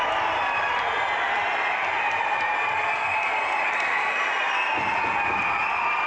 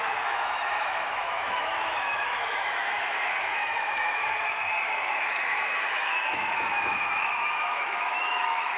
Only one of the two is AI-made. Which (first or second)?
second